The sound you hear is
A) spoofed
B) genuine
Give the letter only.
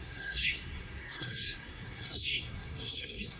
A